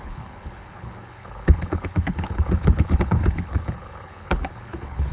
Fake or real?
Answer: fake